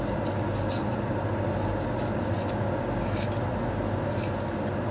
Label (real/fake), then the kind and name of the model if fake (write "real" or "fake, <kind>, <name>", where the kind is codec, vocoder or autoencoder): real